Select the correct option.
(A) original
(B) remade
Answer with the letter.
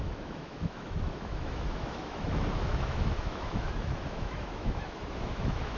B